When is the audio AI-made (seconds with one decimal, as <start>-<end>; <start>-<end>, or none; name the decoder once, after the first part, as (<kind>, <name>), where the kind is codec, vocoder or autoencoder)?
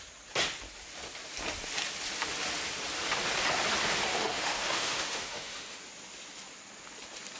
4.1-5.8 (autoencoder, DAC-VAE)